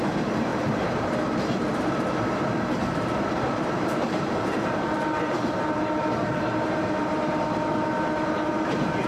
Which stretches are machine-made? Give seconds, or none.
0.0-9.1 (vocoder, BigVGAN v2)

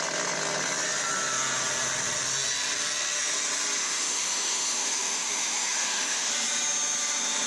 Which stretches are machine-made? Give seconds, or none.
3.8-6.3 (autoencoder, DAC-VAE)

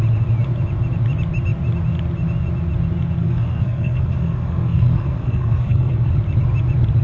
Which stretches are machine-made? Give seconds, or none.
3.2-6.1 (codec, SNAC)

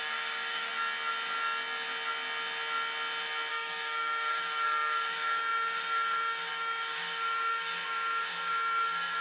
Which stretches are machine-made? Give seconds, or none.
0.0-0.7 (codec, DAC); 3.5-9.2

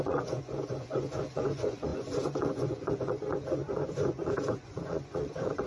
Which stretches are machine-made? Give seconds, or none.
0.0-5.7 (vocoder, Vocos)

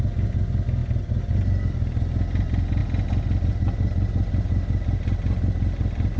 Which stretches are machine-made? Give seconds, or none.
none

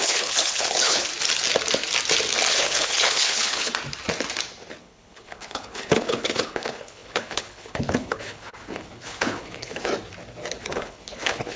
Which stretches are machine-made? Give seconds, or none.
0.0-1.1 (codec, HILCodec); 2.5-3.7; 4.8-9.9; 10.6-11.6

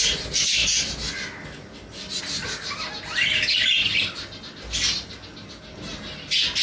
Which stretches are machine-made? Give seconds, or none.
none